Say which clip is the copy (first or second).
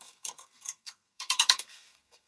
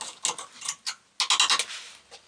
first